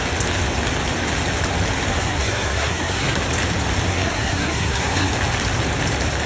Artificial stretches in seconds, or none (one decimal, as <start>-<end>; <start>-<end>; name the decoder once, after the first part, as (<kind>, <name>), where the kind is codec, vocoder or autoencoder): 1.9-3.2 (codec, SNAC); 3.9-5.1